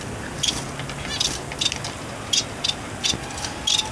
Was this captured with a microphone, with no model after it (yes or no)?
yes